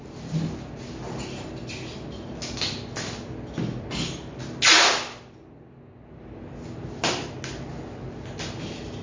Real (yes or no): yes